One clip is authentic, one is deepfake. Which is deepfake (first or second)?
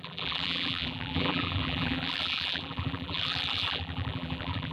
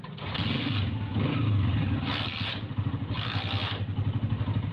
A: first